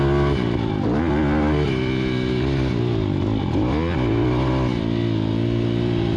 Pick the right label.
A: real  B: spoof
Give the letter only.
A